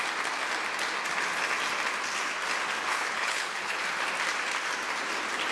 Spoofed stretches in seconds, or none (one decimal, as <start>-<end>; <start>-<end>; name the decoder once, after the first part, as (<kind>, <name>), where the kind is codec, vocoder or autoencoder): 2.9-3.8 (codec, HILCodec)